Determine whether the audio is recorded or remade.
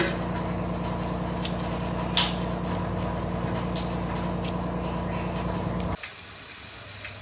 recorded